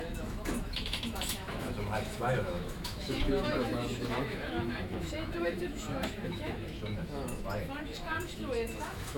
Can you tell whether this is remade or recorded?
remade